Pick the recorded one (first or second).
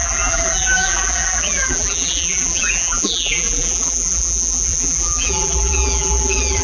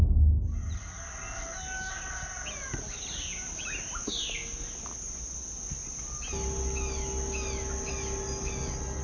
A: second